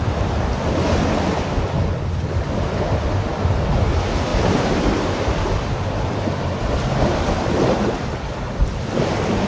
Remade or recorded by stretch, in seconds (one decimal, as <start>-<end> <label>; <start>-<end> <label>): 0.0-4.3 recorded; 4.3-6.7 remade; 6.7-9.5 recorded